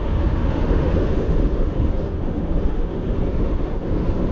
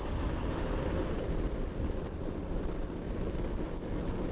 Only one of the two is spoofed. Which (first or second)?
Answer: first